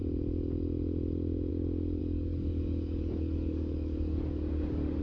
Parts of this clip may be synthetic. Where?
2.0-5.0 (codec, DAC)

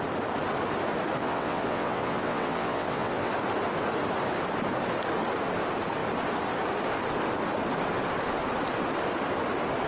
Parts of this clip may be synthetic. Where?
1.2-3.3 (vocoder, WaveNeXt)